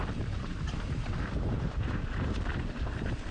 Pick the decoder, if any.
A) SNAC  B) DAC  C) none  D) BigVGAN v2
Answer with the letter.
D